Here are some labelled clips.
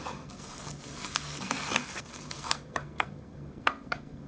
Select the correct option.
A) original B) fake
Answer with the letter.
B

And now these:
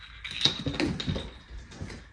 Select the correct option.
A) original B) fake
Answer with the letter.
A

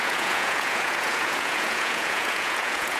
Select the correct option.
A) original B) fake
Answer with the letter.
B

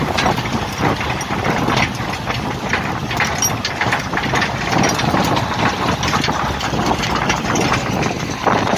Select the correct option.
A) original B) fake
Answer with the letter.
A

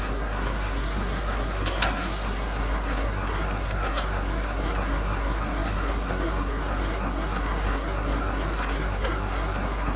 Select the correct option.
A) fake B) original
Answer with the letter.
A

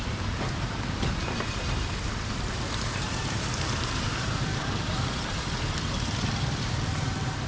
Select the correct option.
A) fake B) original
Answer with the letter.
A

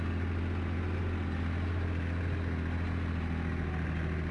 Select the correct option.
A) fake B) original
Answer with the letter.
B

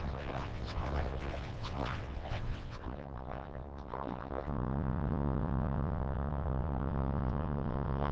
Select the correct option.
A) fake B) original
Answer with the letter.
A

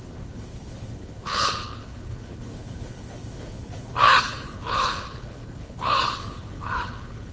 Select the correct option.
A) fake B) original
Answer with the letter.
A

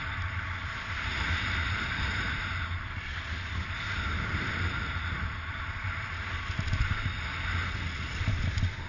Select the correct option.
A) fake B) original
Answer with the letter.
B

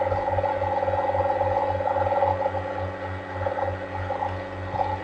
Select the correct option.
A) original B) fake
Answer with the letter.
A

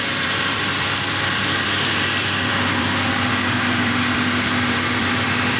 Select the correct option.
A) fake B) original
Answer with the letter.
A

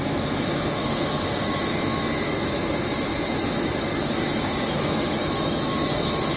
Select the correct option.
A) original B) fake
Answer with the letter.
B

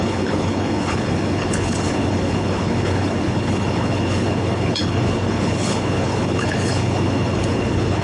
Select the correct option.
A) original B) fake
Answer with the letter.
B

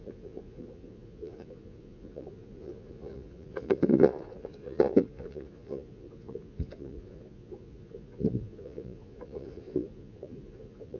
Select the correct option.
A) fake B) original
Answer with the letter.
A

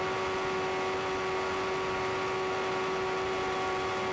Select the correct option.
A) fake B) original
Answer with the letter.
B